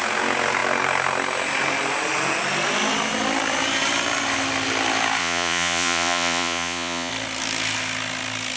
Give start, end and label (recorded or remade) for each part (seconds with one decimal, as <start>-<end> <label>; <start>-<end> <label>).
0.0-5.2 recorded; 5.2-7.1 remade; 7.1-8.6 recorded